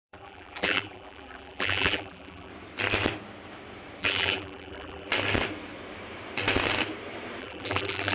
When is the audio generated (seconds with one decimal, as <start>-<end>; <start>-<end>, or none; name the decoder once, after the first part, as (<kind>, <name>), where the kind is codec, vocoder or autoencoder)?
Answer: 0.0-2.5 (vocoder, BigVGAN v2); 4.0-5.1; 7.4-8.1